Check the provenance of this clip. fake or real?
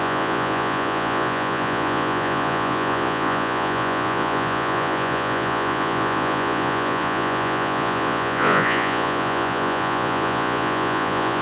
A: fake